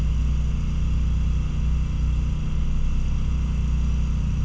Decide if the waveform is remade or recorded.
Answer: recorded